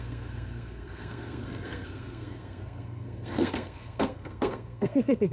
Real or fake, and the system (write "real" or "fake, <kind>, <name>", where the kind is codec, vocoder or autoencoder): fake, codec, SNAC